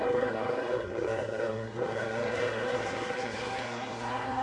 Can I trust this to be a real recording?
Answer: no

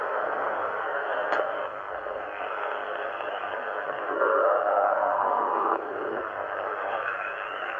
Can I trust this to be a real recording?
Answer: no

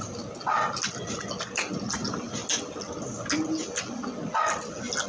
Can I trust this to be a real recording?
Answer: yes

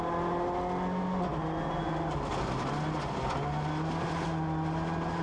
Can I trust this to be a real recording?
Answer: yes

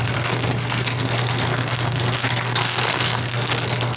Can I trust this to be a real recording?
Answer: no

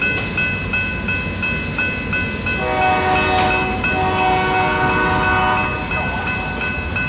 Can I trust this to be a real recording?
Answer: yes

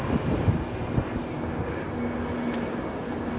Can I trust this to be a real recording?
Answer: yes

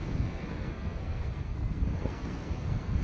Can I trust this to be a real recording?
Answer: no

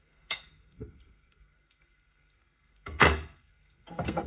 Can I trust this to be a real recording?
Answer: no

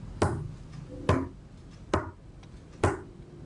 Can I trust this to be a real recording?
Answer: yes